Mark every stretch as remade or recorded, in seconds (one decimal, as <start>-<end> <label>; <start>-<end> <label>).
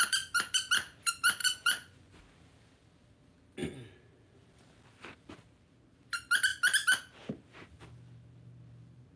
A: 0.0-1.4 recorded; 1.4-2.2 remade; 2.2-9.2 recorded